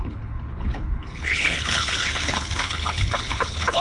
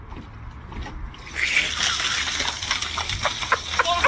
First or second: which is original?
second